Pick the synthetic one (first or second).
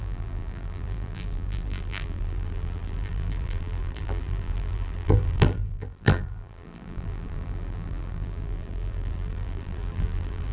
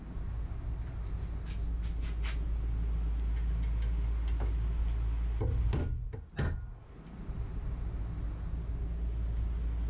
first